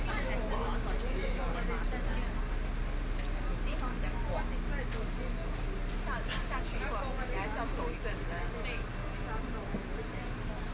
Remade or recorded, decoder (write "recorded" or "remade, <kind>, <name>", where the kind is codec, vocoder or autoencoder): recorded